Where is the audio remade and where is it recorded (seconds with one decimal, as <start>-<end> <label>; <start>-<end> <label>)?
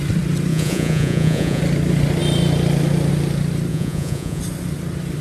0.0-0.5 recorded; 0.5-1.6 remade; 1.6-3.7 recorded; 3.7-4.4 remade; 4.4-5.2 recorded